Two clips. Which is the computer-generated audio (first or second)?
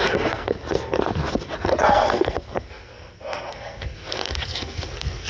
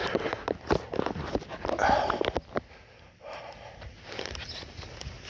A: first